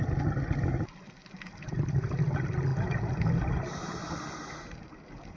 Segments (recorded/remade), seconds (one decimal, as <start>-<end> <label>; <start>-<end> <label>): 0.0-5.4 recorded